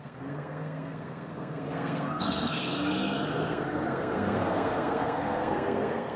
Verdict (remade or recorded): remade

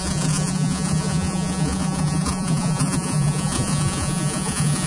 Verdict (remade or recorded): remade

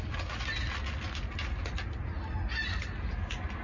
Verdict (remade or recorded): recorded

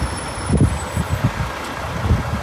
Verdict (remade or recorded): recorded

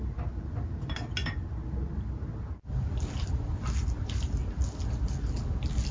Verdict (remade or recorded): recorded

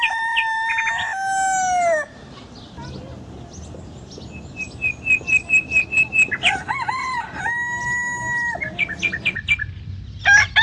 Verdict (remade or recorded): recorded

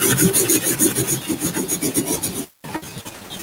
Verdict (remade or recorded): recorded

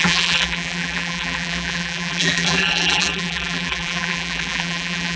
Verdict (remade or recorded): remade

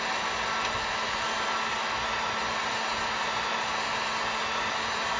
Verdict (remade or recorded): recorded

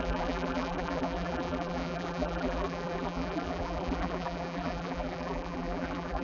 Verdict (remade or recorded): remade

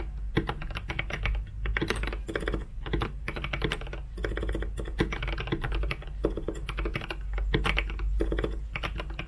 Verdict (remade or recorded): recorded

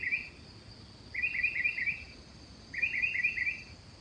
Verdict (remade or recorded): recorded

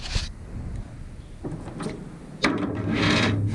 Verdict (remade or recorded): recorded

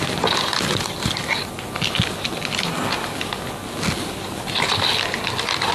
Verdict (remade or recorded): recorded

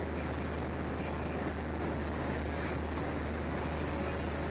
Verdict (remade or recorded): recorded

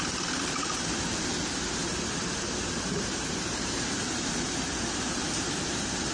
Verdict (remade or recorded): remade